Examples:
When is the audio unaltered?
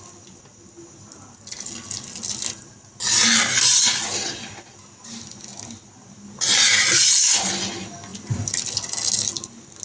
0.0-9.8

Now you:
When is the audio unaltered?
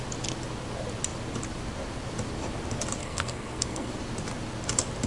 0.0-3.0; 3.9-5.1